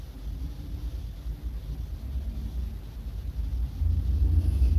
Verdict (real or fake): real